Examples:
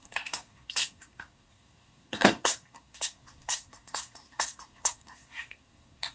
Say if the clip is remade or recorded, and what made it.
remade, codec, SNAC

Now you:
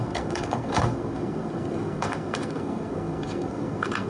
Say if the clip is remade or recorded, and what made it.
remade, codec, SNAC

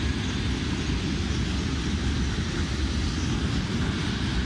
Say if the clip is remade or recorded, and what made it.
recorded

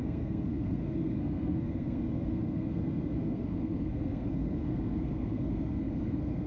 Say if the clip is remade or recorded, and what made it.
remade, codec, SNAC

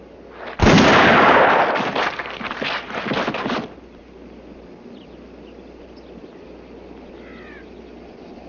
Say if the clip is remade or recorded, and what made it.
recorded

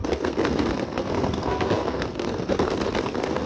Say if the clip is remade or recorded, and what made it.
remade, codec, SNAC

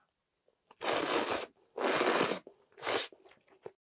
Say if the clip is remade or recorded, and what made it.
recorded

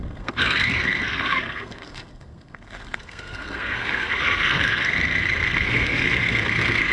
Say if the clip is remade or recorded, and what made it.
remade, codec, SNAC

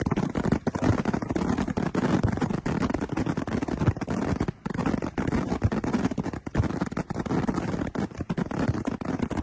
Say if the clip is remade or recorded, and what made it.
recorded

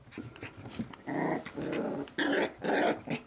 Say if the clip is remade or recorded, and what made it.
recorded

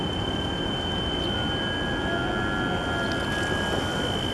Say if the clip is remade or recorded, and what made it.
recorded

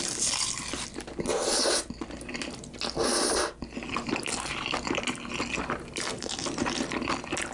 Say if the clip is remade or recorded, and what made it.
recorded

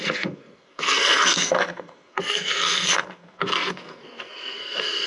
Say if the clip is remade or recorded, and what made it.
remade, codec, SNAC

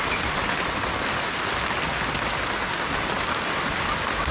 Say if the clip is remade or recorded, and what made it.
recorded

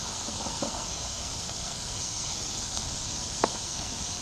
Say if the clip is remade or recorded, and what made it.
remade, codec, SNAC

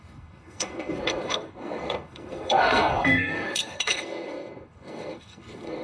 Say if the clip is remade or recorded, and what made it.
remade, codec, SNAC